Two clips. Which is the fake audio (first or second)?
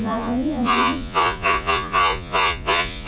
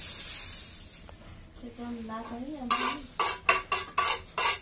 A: first